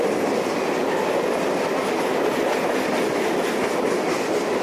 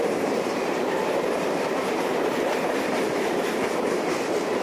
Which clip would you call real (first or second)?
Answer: first